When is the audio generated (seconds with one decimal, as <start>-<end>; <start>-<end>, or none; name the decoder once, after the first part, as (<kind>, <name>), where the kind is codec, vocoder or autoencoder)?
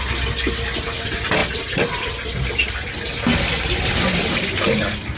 none